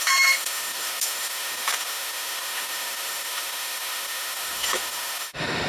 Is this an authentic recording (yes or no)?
no